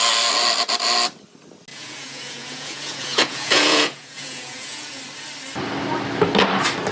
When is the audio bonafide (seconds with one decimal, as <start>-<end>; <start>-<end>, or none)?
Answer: 0.0-1.7; 5.0-6.9